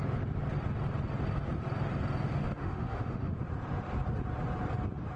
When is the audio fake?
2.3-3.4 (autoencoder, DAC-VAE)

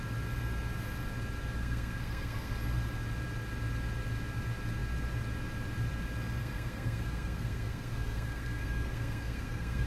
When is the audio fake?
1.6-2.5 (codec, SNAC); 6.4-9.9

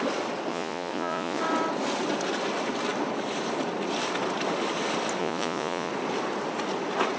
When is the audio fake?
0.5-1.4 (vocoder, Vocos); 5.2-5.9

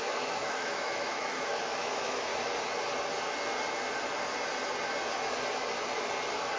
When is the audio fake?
0.0-2.3 (autoencoder, DAC-VAE)